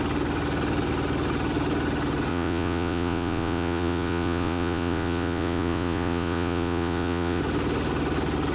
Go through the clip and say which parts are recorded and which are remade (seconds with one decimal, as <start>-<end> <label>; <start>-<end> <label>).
0.0-2.3 recorded; 2.3-7.4 remade; 7.4-8.5 recorded